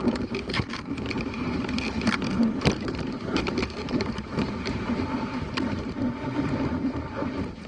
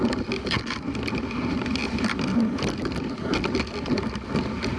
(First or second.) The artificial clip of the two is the first